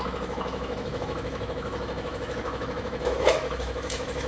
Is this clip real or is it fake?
fake